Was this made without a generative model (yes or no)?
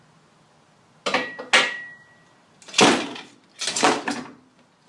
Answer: yes